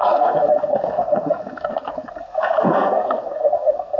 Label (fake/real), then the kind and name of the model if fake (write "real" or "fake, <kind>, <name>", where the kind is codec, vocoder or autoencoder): fake, codec, SNAC